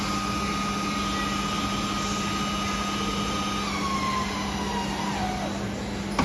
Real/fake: real